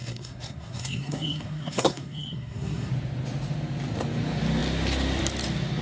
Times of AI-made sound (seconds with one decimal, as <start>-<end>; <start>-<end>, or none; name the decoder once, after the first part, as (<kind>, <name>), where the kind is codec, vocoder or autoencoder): 0.0-2.9 (codec, SNAC)